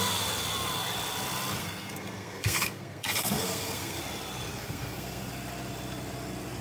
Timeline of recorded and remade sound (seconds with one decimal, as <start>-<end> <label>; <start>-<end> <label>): 0.0-1.6 recorded; 1.6-4.0 remade; 4.0-4.5 recorded; 4.5-5.3 remade; 5.3-6.6 recorded